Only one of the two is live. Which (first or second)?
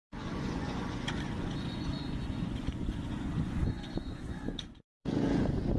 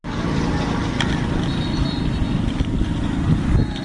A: second